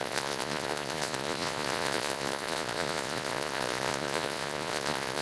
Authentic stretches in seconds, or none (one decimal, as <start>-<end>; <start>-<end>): none